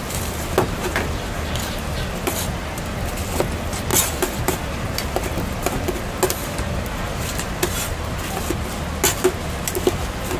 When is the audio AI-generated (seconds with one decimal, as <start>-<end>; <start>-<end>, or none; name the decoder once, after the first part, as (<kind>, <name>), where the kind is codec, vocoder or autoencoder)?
none